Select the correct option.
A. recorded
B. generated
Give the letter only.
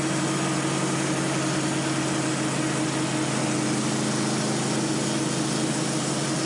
A